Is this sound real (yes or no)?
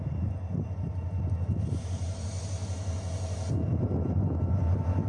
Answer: yes